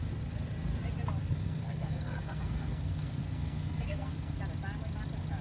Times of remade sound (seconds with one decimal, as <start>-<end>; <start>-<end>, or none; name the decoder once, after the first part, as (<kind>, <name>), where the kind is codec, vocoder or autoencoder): 1.2-4.4 (codec, SNAC)